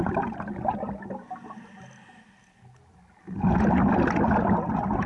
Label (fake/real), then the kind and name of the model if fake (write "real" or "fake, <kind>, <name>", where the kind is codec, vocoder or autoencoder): real